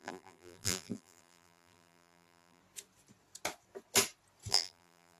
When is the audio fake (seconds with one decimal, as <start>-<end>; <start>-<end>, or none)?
0.0-2.6; 4.5-5.2